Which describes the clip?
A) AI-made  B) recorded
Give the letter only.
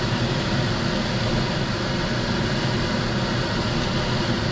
B